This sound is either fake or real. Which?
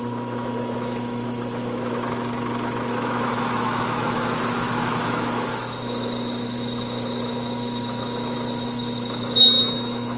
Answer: fake